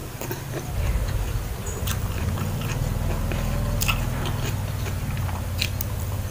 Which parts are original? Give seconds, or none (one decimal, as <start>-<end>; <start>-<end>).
0.0-6.3